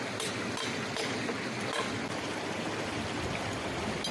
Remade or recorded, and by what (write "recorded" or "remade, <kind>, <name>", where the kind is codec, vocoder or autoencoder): recorded